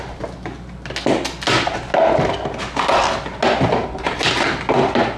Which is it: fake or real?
real